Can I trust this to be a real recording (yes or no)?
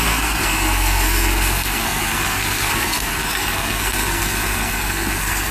no